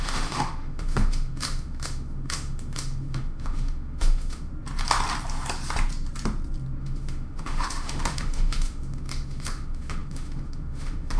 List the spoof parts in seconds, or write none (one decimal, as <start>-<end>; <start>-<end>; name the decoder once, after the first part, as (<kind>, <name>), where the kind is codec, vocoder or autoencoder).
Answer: 0.0-4.5 (autoencoder, DAC-VAE); 6.8-11.2